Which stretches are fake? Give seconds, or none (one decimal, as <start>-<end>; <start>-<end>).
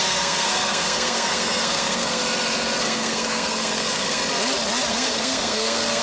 0.0-2.2; 2.8-4.2; 4.9-6.0